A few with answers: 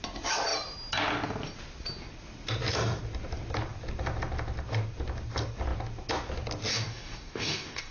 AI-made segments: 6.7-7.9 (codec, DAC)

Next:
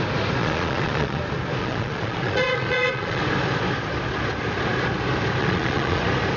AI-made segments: 0.4-1.2 (vocoder, Vocos); 1.6-3.2; 5.4-6.0